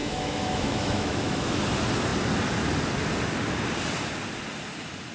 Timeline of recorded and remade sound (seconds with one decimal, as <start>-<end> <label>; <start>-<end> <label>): 0.0-1.6 remade; 1.6-5.1 recorded